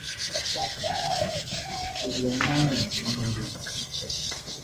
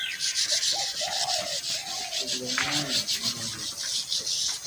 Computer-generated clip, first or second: first